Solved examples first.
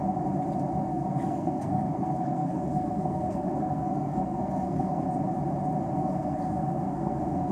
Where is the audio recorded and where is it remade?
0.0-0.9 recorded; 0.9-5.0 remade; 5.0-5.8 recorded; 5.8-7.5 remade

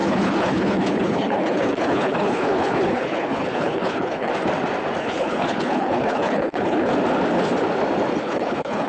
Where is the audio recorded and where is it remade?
0.0-4.3 remade; 4.3-5.0 recorded; 5.0-6.9 remade; 6.9-8.2 recorded; 8.2-8.9 remade

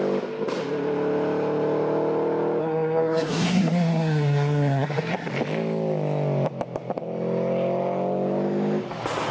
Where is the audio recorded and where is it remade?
0.0-2.6 recorded; 2.6-5.3 remade; 5.3-9.3 recorded

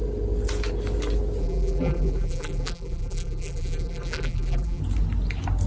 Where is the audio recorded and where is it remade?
0.0-1.4 recorded; 1.4-4.8 remade; 4.8-5.7 recorded

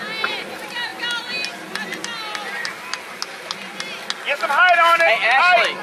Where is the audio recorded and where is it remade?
0.0-5.8 recorded

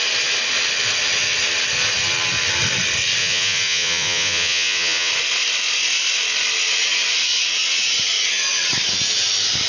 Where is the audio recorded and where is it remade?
0.0-3.2 recorded; 3.2-5.1 remade; 5.1-9.7 recorded

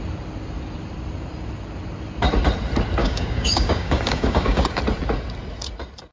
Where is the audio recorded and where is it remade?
0.0-3.0 recorded; 3.0-4.8 remade; 4.8-6.1 recorded

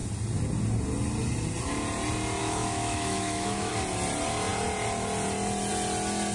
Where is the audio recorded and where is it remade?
0.0-2.4 recorded; 2.4-3.7 remade; 3.7-6.3 recorded